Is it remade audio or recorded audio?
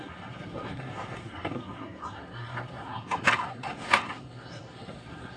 remade